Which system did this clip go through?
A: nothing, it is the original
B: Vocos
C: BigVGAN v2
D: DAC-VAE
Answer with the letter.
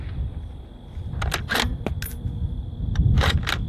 A